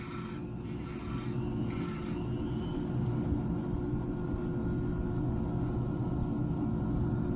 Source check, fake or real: real